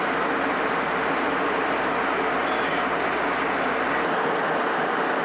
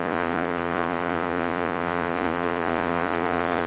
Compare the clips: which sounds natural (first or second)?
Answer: first